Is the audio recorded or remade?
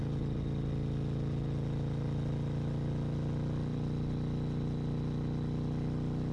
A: recorded